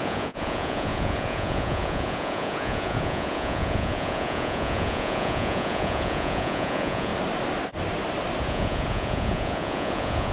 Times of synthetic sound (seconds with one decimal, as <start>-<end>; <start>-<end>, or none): 0.0-7.1; 8.4-10.3